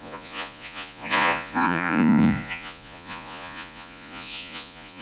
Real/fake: fake